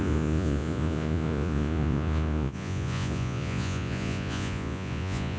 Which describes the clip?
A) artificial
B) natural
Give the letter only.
A